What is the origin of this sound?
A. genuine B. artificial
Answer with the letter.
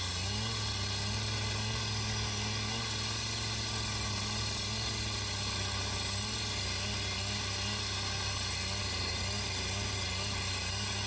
A